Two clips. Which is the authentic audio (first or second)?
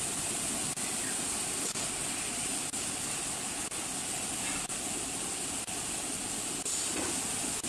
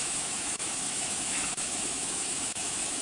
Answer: first